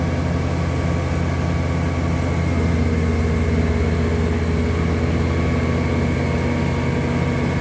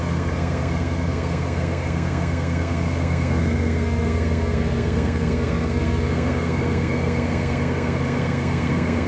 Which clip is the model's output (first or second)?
second